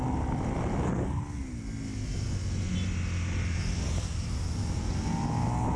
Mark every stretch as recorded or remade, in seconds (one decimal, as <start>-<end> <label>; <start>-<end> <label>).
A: 0.0-5.8 recorded